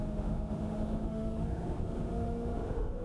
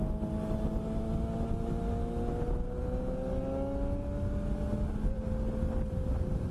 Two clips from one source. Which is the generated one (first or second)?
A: first